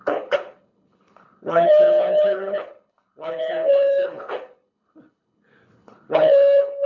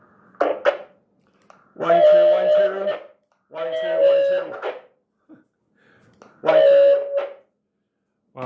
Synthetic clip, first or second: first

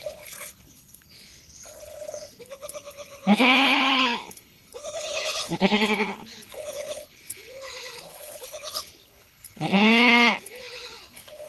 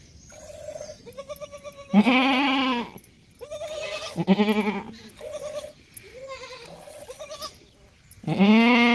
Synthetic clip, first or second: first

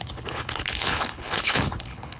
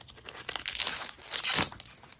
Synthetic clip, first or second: first